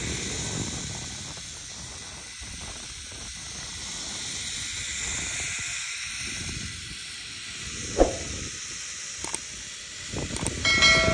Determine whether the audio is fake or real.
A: real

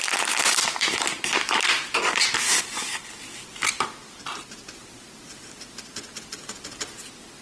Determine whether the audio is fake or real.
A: real